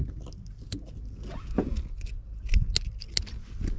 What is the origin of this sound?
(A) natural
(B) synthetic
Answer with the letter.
A